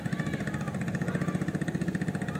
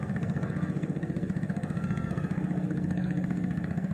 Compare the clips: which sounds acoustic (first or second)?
first